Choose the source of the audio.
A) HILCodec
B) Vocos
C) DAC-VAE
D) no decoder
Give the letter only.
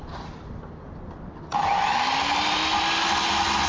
D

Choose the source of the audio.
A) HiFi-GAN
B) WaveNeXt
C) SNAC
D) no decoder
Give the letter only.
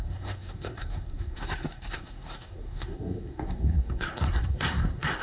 C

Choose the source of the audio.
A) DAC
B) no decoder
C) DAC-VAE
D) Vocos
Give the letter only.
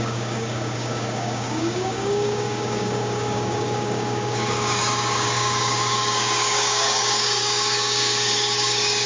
A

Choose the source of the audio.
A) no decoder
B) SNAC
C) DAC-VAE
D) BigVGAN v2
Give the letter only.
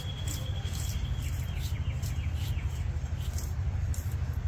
A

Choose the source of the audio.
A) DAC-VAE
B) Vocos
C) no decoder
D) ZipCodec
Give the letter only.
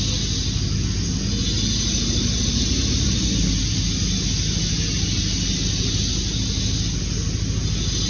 C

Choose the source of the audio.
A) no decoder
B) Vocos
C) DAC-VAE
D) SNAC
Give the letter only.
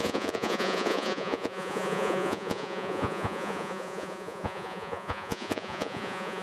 B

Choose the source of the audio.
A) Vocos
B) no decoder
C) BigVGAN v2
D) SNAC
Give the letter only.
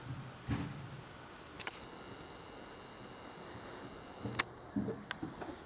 B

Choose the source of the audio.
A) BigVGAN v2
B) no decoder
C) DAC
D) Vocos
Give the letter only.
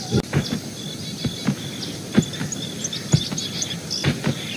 B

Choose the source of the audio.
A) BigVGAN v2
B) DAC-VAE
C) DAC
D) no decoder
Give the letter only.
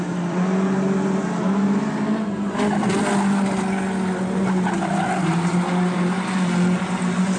D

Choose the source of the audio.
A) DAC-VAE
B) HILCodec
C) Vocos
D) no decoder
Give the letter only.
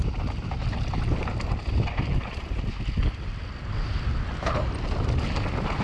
D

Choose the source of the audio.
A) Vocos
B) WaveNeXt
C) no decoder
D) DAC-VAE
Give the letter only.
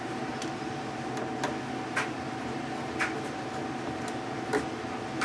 C